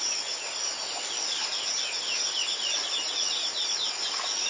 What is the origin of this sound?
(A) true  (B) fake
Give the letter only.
A